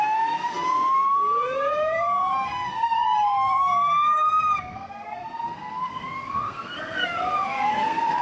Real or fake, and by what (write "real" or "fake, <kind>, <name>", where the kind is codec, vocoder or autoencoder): fake, codec, SNAC